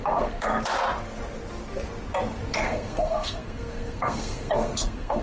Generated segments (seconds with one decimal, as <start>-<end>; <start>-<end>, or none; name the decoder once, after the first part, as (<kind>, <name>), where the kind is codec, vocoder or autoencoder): 0.0-0.5 (codec, SNAC); 2.5-5.2